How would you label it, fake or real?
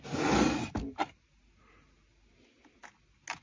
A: real